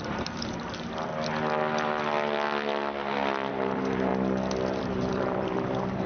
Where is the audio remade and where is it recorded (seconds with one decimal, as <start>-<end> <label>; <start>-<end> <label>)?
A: 0.0-1.1 remade; 1.1-3.5 recorded; 3.5-4.1 remade; 4.1-4.8 recorded; 4.8-6.1 remade